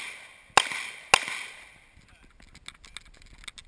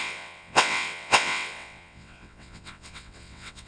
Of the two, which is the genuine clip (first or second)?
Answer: first